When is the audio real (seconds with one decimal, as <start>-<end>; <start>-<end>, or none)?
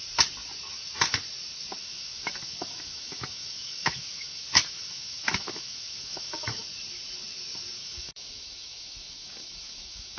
0.0-1.8; 6.6-7.8